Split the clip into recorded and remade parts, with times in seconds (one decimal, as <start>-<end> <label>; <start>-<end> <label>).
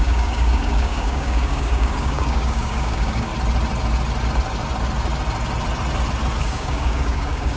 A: 0.0-3.3 remade; 3.3-6.4 recorded; 6.4-7.6 remade